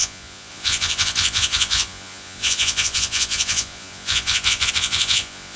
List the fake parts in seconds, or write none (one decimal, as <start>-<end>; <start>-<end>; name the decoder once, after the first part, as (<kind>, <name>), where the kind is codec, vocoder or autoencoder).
0.0-5.6 (vocoder, Vocos)